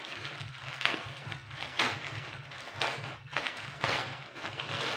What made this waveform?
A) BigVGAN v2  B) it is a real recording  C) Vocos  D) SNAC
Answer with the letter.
D